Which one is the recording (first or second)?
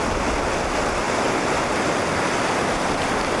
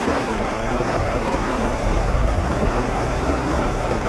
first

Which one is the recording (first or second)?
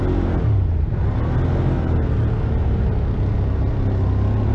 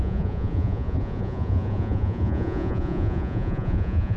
first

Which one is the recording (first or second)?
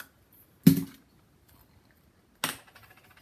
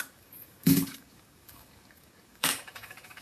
first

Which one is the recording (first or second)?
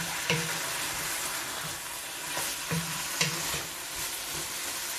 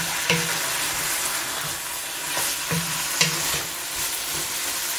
second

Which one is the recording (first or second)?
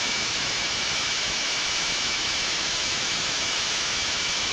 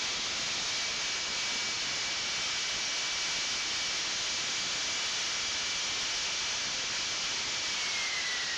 second